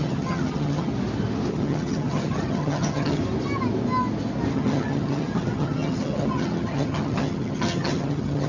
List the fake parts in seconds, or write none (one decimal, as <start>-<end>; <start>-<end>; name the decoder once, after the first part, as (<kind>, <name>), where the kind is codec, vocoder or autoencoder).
0.0-0.9 (vocoder, HiFi-GAN); 1.5-3.2; 4.5-8.5